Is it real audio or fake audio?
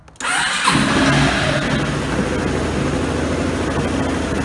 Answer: real